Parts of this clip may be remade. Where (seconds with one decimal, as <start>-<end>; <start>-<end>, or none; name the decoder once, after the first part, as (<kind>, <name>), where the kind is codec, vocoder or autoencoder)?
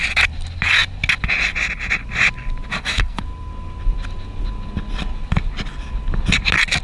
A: 2.7-3.2 (codec, SNAC)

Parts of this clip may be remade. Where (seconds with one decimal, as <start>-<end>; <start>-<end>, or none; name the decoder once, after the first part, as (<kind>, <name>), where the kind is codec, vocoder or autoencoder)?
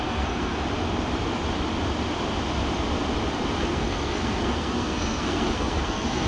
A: 0.0-0.5 (codec, SNAC); 3.6-6.3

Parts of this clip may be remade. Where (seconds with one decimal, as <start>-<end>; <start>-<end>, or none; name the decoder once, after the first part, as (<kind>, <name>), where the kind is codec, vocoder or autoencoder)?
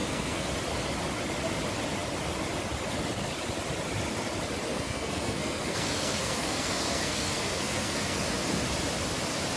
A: 0.0-0.5 (codec, SNAC); 4.7-8.2